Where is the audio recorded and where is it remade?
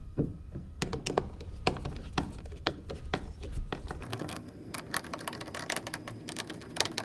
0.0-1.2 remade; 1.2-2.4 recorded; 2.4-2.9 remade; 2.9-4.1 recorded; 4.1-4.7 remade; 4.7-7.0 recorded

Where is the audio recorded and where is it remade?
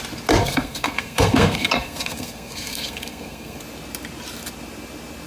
0.0-0.4 recorded; 0.4-3.6 remade; 3.6-5.3 recorded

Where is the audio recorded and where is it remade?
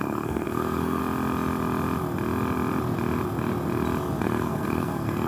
0.0-1.0 remade; 1.0-4.2 recorded; 4.2-5.3 remade